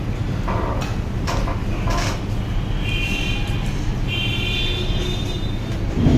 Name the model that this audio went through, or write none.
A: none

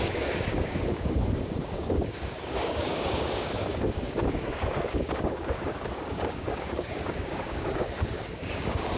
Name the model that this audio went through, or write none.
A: codec, DAC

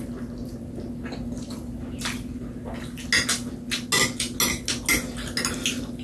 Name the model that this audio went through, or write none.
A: none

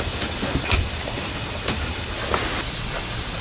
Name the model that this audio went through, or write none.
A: none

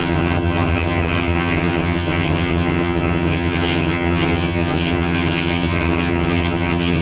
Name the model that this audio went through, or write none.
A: vocoder, HiFi-GAN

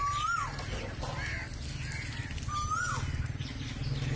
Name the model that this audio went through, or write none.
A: none